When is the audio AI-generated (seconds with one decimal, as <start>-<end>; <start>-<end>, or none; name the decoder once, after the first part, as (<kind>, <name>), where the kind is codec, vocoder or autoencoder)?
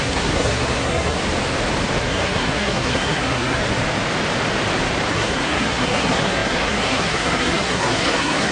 0.0-1.2 (codec, SNAC); 2.0-3.6; 5.1-8.5